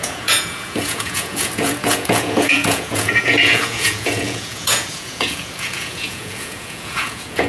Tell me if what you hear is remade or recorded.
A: remade